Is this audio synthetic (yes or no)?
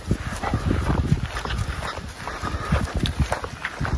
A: no